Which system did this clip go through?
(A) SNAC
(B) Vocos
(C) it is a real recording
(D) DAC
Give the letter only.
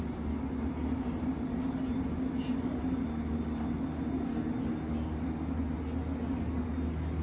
C